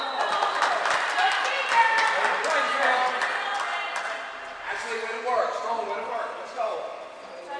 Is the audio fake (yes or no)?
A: no